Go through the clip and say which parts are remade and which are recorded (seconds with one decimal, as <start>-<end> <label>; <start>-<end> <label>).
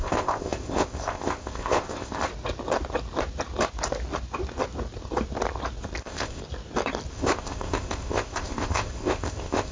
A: 0.0-2.3 remade; 2.3-6.0 recorded; 6.0-6.4 remade; 6.4-7.1 recorded; 7.1-9.7 remade